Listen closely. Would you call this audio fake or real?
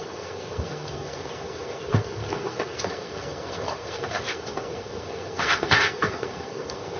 fake